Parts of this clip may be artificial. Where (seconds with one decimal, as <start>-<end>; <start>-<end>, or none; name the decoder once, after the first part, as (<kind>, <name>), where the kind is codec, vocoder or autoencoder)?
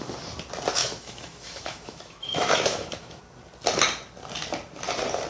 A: 0.8-3.2 (autoencoder, DAC-VAE)